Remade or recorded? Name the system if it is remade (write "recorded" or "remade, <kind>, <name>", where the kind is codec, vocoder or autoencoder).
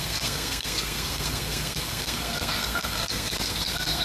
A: remade, codec, SNAC